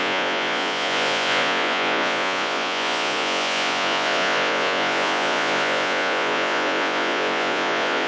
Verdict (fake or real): fake